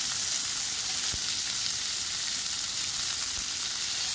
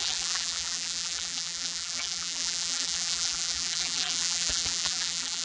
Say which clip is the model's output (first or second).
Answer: second